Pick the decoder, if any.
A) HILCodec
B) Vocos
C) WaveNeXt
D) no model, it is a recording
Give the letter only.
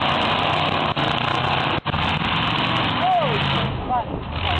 D